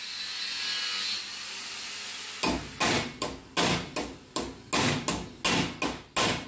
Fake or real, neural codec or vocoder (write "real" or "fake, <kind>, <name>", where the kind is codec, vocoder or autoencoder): real